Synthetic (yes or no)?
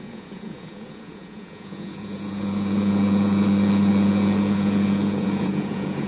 yes